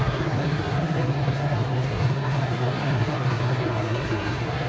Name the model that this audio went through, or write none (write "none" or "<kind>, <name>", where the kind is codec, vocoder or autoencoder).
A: codec, SNAC